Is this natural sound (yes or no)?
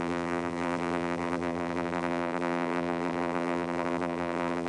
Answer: no